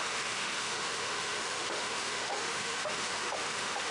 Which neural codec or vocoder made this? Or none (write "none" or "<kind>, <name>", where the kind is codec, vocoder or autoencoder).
autoencoder, DAC-VAE